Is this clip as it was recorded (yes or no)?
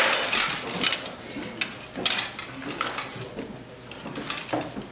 yes